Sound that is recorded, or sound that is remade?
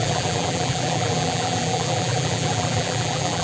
remade